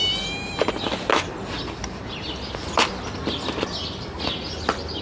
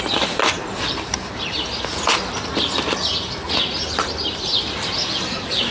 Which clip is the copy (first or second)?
second